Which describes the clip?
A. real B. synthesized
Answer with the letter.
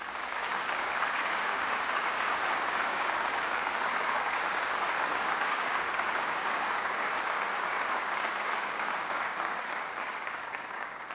B